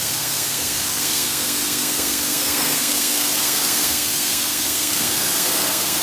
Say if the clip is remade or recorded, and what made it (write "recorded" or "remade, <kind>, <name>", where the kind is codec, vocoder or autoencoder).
remade, codec, SNAC